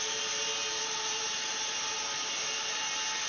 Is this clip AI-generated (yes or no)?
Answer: no